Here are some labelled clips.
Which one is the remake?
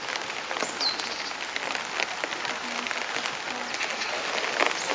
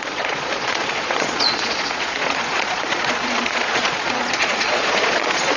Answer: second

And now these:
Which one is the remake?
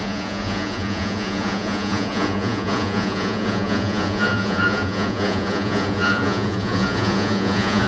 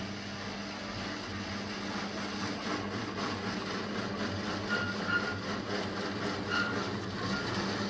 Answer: first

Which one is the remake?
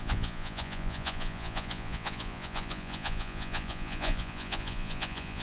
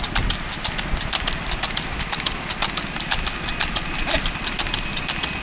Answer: first